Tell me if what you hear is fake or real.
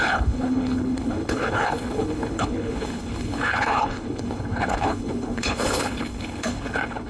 fake